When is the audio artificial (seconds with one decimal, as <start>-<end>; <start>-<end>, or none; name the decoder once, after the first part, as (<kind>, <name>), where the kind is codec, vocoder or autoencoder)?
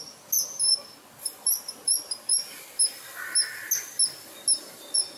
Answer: 0.7-2.3 (vocoder, BigVGAN v2)